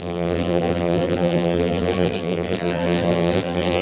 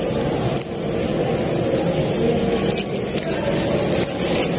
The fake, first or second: first